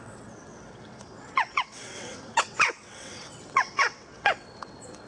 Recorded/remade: remade